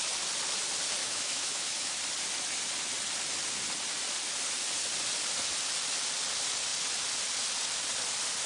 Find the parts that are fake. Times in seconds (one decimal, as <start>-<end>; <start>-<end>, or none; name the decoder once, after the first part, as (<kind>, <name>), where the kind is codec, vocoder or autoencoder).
1.0-2.0 (autoencoder, DAC-VAE)

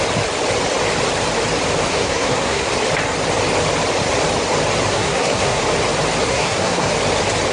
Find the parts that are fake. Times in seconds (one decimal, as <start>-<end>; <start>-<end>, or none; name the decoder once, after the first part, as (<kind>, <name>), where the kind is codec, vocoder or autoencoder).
1.9-2.7 (codec, SNAC); 4.9-5.6; 6.3-6.9

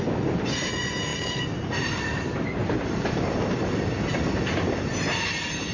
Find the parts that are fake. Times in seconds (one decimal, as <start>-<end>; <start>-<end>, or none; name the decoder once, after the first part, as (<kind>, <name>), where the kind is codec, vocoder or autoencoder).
1.1-4.5 (vocoder, BigVGAN v2)

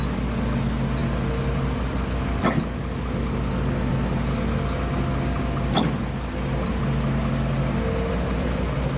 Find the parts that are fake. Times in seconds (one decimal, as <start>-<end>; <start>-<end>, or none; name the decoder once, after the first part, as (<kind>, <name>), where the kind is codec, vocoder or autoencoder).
none

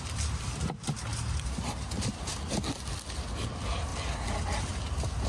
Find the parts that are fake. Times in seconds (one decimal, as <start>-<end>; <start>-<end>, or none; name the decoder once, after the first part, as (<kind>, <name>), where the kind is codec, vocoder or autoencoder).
none